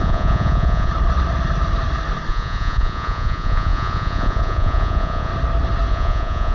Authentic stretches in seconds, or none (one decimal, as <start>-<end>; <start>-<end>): 0.9-2.3; 5.3-5.9